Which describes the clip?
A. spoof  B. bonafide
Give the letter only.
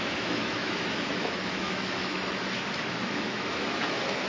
A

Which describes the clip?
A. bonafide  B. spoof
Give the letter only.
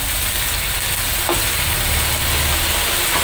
A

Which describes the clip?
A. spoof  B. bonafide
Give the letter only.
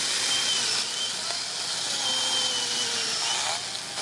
B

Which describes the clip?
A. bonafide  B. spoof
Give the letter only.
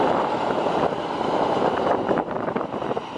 B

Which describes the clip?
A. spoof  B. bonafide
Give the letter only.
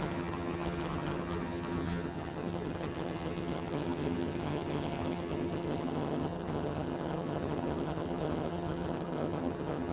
A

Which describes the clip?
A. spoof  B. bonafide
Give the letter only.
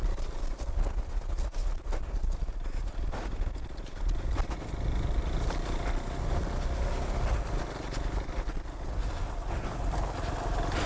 B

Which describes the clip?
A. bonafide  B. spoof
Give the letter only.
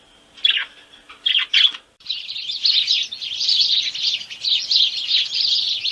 B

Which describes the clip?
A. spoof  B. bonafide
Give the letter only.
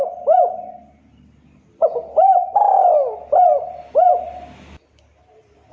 A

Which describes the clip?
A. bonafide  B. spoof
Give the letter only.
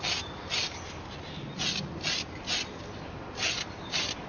A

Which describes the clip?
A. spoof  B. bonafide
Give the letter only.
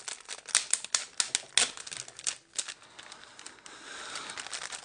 B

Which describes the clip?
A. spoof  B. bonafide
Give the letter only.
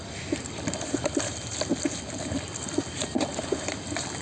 B